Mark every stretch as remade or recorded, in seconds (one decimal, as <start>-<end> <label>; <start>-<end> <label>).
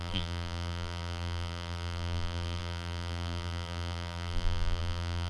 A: 0.0-5.3 remade